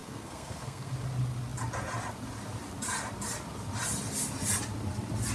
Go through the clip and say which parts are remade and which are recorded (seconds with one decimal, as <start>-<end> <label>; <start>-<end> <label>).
0.0-0.9 remade; 0.9-5.3 recorded